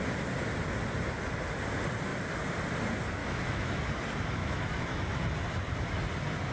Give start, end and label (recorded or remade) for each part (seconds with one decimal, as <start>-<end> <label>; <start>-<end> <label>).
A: 0.0-3.2 recorded; 3.2-3.8 remade; 3.8-4.4 recorded; 4.4-5.2 remade; 5.2-6.5 recorded